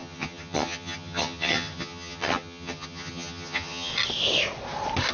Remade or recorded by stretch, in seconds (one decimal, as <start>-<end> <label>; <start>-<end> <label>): 0.0-3.9 remade; 3.9-5.1 recorded